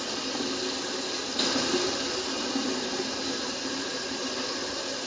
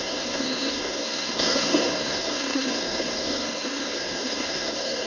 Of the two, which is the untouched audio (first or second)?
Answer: first